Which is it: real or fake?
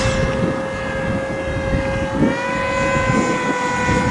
real